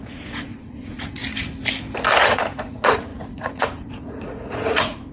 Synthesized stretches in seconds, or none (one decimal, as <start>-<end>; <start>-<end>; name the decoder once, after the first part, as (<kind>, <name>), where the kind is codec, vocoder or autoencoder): 0.0-1.2 (vocoder, Vocos); 2.2-5.1